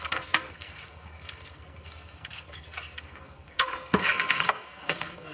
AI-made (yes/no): yes